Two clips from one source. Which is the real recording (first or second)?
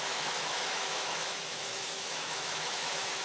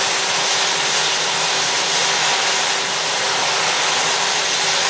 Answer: second